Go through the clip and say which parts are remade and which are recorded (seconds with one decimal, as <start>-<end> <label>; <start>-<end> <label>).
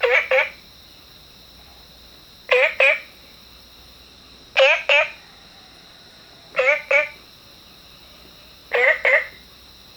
0.0-10.0 recorded